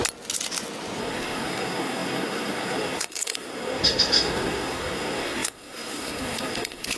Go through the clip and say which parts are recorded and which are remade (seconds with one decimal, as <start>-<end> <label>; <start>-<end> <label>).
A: 0.0-1.0 recorded; 1.0-7.0 remade